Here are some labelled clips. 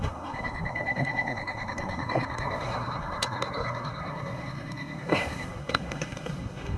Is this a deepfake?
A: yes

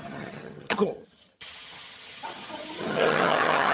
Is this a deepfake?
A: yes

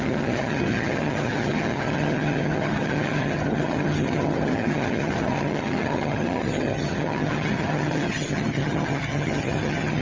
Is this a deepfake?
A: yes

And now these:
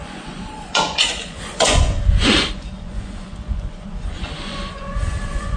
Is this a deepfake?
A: yes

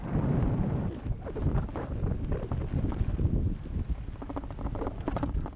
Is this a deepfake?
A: no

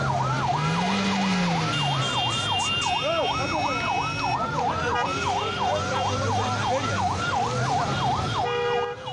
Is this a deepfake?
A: no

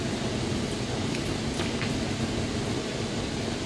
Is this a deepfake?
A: no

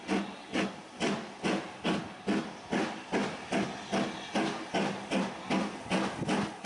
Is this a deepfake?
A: no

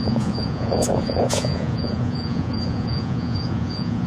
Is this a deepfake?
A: yes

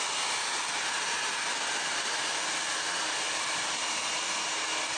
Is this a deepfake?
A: no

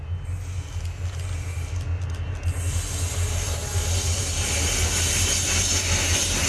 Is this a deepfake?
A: no